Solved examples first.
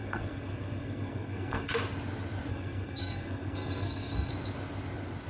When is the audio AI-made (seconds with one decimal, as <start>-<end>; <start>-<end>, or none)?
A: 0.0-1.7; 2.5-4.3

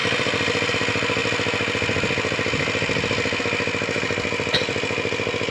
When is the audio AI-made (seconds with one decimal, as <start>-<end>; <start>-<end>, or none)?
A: 0.0-0.7

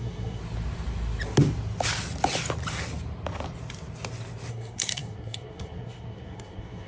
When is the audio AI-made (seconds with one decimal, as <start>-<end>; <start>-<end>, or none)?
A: 0.0-0.4; 4.5-6.9